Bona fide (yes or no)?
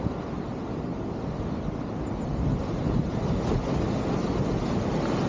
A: yes